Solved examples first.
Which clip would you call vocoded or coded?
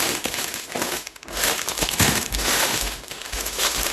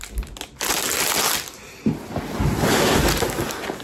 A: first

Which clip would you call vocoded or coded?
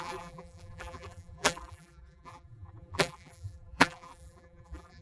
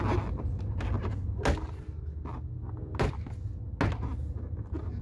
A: first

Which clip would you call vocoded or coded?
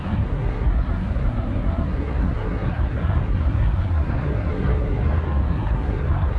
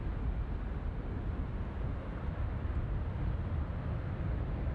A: first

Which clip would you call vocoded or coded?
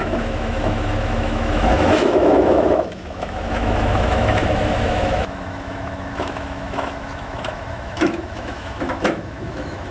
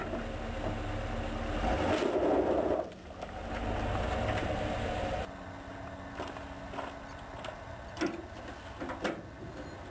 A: first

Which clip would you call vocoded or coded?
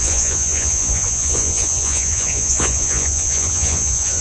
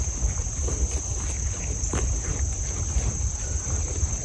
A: first